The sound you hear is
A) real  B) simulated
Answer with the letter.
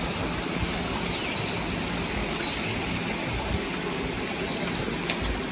A